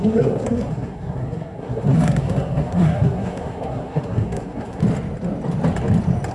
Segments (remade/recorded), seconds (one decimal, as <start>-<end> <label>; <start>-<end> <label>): 0.0-4.8 remade; 4.8-6.3 recorded